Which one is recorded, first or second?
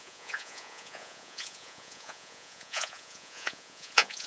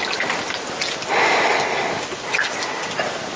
second